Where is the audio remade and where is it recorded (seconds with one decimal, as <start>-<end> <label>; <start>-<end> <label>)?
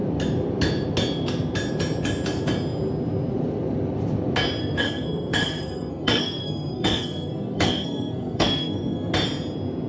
0.0-4.6 recorded; 4.6-9.1 remade; 9.1-9.9 recorded